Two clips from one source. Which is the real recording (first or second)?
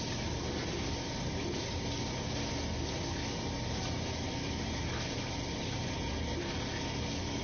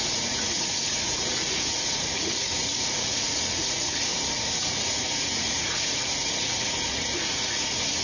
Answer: first